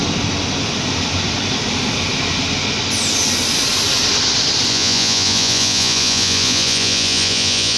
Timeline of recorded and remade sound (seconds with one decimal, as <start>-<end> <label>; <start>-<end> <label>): 0.0-4.7 recorded; 4.7-7.8 remade

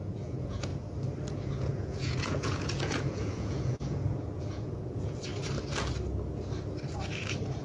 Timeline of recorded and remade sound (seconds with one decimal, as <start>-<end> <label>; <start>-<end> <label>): 0.0-0.7 remade; 0.7-1.3 recorded; 1.3-5.3 remade; 5.3-7.6 recorded

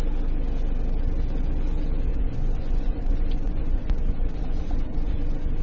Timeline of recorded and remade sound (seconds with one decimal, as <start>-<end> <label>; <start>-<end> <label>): 0.0-2.1 recorded; 2.1-5.6 remade

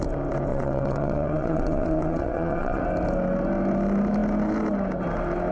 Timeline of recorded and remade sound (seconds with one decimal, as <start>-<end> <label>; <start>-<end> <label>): 0.0-0.5 recorded; 0.5-2.8 remade; 2.8-5.5 recorded